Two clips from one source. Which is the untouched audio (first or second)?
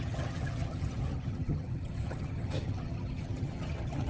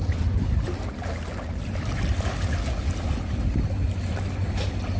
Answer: second